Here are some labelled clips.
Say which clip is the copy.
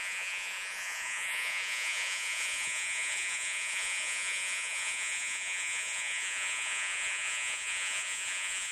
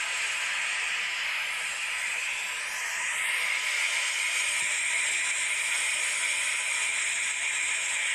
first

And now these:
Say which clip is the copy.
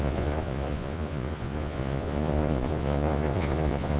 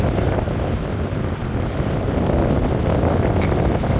first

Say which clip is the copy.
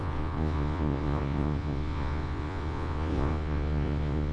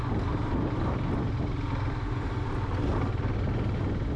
first